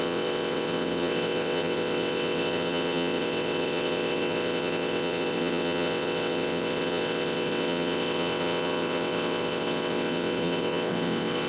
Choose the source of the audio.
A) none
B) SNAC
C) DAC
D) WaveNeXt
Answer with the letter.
D